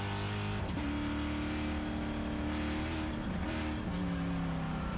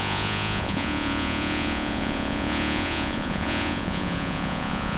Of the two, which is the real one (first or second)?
first